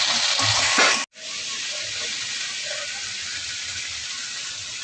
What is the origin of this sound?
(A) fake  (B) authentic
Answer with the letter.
B